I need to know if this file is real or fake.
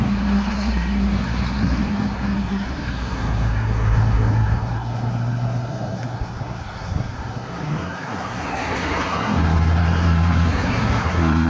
fake